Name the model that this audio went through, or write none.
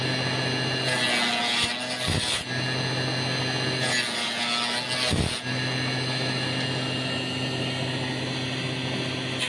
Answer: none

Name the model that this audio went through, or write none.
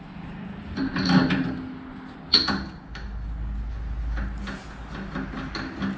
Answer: none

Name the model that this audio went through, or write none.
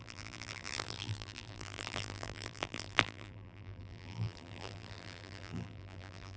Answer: vocoder, BigVGAN v2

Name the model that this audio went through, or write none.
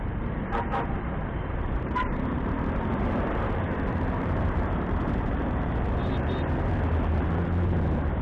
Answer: vocoder, BigVGAN v2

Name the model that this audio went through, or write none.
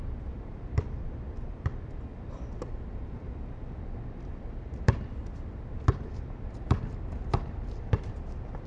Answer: vocoder, BigVGAN v2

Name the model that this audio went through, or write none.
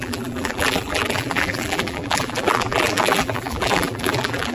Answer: vocoder, BigVGAN v2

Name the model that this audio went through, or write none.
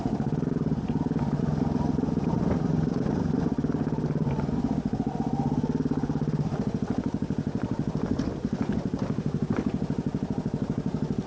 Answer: none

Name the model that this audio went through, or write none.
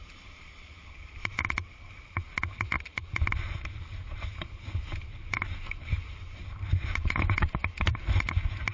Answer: vocoder, BigVGAN v2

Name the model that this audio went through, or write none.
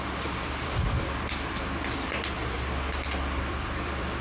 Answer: vocoder, BigVGAN v2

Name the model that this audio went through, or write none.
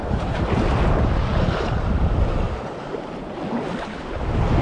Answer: none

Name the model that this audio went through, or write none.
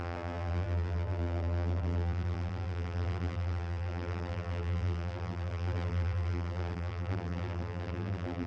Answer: vocoder, BigVGAN v2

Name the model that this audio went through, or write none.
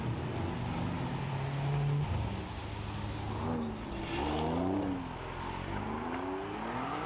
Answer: none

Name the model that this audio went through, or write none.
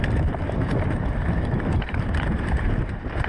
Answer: vocoder, BigVGAN v2